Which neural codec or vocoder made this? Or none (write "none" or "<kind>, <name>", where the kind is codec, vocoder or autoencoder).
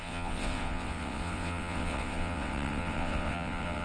vocoder, WaveNeXt